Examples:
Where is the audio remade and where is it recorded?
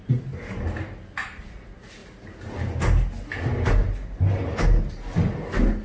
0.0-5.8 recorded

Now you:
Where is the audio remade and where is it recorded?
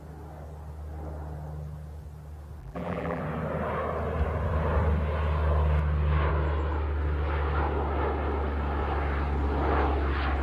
0.0-2.6 recorded; 2.6-3.2 remade; 3.2-10.4 recorded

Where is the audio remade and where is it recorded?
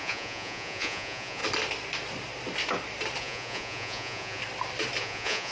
0.0-1.4 remade; 1.4-3.2 recorded; 3.2-4.4 remade; 4.4-5.0 recorded; 5.0-5.5 remade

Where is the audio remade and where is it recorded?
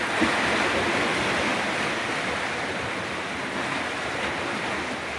0.0-5.2 recorded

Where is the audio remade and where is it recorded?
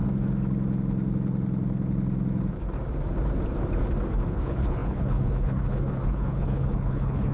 0.0-4.3 recorded; 4.3-7.3 remade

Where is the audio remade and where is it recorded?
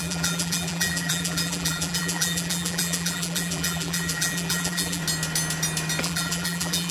0.0-5.0 remade; 5.0-6.0 recorded; 6.0-6.9 remade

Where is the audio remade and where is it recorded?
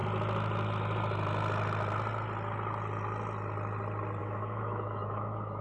0.0-4.2 recorded; 4.2-5.6 remade